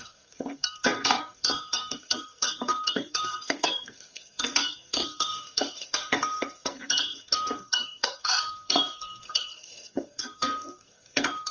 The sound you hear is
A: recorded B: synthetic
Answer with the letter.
B